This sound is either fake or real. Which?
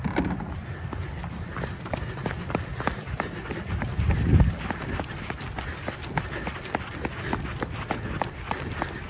real